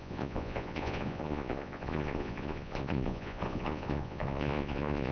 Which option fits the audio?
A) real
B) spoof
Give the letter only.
B